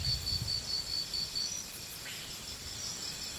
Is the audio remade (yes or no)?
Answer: no